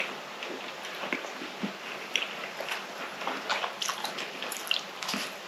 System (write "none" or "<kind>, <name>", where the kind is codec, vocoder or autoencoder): none